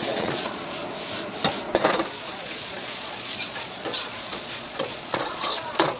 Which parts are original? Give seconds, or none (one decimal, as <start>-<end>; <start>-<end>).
0.8-2.2